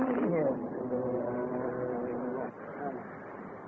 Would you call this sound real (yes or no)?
yes